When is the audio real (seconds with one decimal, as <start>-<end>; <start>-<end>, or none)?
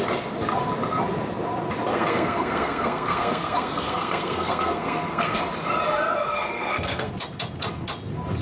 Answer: 0.0-1.9; 5.4-6.2; 7.1-8.4